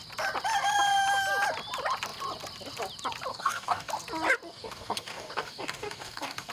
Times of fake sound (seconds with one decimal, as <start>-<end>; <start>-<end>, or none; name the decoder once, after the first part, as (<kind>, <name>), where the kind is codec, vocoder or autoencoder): 3.3-3.9 (codec, DAC); 4.5-6.5